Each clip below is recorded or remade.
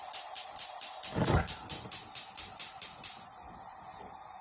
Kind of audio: remade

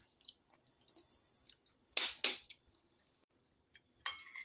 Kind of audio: recorded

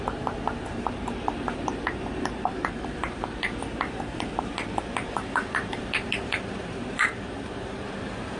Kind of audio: remade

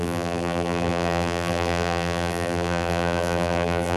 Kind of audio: remade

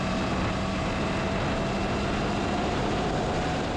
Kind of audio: recorded